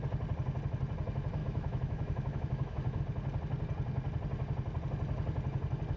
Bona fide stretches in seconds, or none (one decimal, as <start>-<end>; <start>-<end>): 0.0-1.4; 3.0-6.0

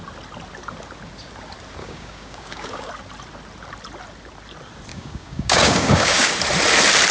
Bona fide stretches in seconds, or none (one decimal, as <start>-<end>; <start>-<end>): 0.0-1.8; 2.9-4.9; 6.3-7.1